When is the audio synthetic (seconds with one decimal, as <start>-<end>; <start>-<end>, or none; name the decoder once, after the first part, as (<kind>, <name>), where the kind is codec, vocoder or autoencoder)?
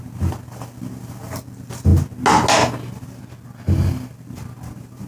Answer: 0.0-1.9 (vocoder, BigVGAN v2); 3.2-5.1